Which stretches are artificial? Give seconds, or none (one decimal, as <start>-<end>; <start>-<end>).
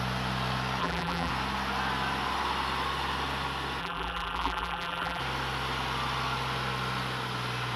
0.8-1.3; 3.8-5.2